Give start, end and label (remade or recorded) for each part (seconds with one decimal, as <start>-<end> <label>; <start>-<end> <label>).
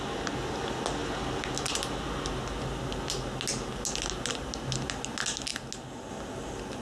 0.0-6.8 recorded